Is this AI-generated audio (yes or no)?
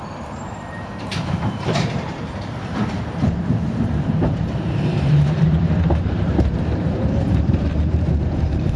yes